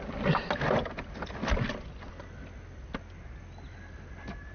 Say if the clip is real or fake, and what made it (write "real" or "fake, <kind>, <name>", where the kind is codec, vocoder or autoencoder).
real